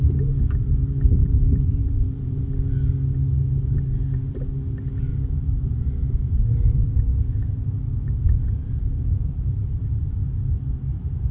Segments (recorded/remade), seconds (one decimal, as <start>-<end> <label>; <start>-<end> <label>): 0.0-1.2 recorded; 1.2-2.5 remade; 2.5-5.1 recorded; 5.1-6.3 remade; 6.3-8.6 recorded; 8.6-10.1 remade; 10.1-11.3 recorded